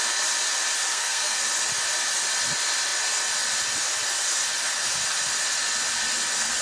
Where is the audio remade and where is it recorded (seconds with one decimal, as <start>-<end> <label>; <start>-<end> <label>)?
0.0-0.9 recorded; 0.9-1.4 remade; 1.4-6.6 recorded